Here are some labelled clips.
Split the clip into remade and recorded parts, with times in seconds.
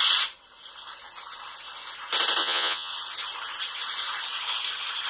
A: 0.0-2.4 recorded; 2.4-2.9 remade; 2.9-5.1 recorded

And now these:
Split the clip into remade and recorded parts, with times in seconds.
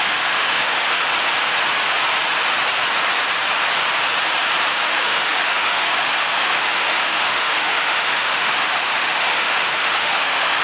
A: 0.0-1.1 remade; 1.1-4.7 recorded; 4.7-10.6 remade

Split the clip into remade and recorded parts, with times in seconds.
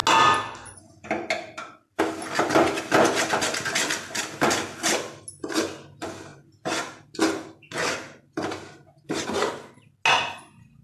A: 0.0-10.8 recorded